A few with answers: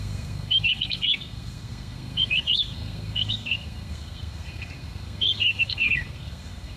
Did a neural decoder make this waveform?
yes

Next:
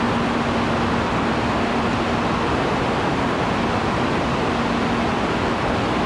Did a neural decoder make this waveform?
no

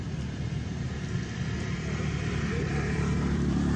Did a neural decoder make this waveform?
yes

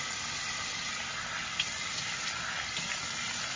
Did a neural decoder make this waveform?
no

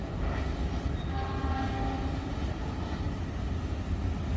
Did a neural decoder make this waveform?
no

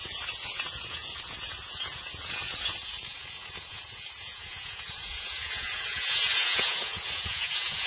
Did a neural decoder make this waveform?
yes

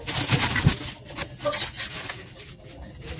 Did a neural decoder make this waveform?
no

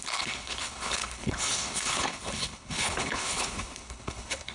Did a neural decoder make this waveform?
yes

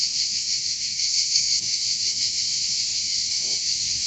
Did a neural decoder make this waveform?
yes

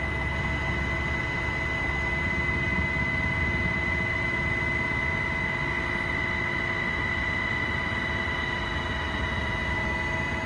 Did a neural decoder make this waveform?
no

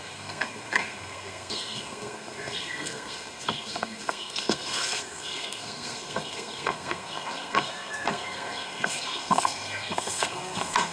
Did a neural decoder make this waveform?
yes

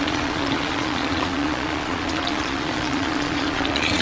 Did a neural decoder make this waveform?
yes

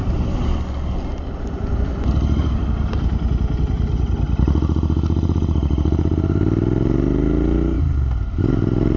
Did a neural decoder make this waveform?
no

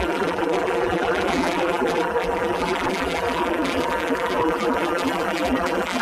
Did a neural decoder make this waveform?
yes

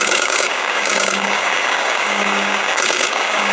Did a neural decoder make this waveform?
yes